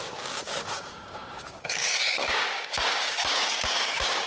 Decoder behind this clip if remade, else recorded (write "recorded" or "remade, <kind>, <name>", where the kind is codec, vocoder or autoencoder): remade, codec, DAC